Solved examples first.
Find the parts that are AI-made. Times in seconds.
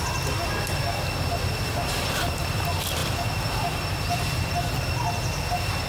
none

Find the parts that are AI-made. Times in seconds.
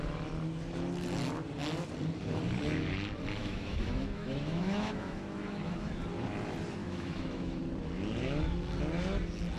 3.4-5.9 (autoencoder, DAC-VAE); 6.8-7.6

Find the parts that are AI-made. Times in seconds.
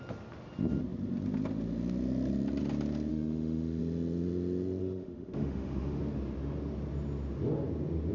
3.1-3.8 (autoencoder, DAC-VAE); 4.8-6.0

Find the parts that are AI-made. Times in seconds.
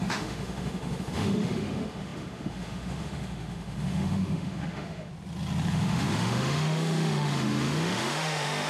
0.0-5.1 (autoencoder, DAC-VAE); 5.7-8.7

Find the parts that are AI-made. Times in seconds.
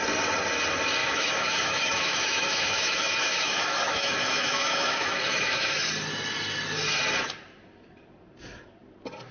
1.0-5.9 (autoencoder, DAC-VAE)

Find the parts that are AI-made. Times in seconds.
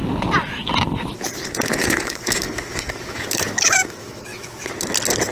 1.8-4.7 (autoencoder, DAC-VAE)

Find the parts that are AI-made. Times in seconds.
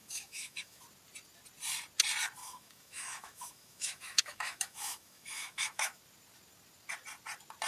0.0-0.8 (autoencoder, DAC-VAE); 2.4-6.0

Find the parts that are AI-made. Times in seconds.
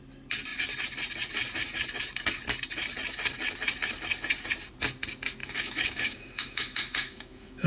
5.4-7.7 (autoencoder, DAC-VAE)